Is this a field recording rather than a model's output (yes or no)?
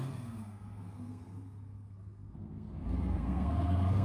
no